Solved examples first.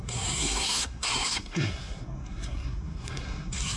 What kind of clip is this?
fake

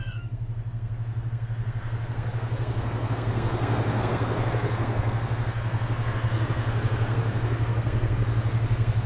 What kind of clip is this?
fake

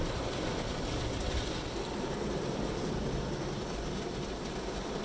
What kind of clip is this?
real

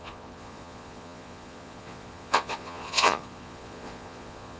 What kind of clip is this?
fake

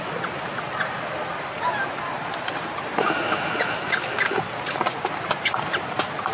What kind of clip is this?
real